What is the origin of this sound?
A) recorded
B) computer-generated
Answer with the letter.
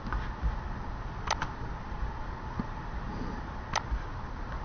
A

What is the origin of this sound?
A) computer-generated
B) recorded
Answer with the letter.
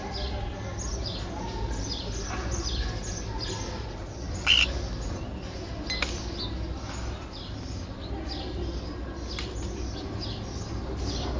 B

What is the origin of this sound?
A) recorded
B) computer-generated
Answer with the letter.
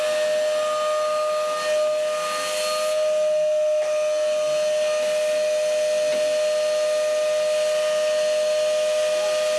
A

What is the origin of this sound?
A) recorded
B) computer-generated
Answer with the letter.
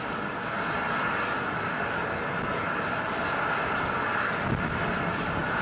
A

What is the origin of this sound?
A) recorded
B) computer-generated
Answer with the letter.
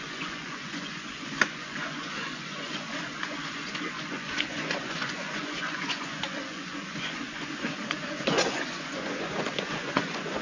B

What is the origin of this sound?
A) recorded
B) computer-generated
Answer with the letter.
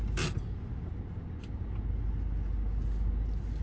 A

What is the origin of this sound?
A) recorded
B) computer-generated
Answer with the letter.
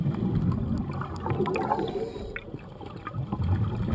A